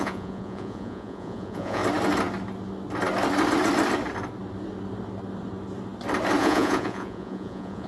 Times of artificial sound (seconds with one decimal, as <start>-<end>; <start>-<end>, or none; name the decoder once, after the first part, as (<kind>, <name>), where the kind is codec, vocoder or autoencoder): 0.0-1.8 (vocoder, Vocos); 6.4-7.9